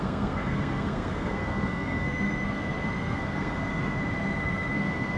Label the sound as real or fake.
fake